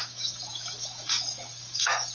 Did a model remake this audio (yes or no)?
yes